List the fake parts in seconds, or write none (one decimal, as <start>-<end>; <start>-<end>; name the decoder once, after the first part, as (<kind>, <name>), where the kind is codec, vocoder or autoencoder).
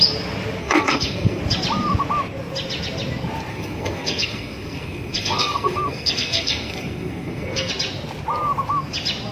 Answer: 0.6-1.4 (codec, SNAC); 3.5-7.7